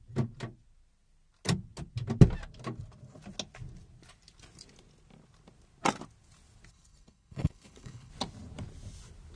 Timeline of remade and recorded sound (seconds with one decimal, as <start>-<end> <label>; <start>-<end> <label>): 0.0-6.7 recorded; 6.7-8.1 remade; 8.1-9.4 recorded